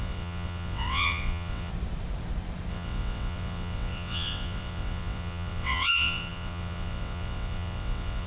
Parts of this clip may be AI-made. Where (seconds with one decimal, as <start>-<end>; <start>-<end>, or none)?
0.0-1.7; 2.7-8.3